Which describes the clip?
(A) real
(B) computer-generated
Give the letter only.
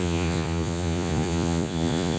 B